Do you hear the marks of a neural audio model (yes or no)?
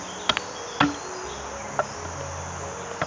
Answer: no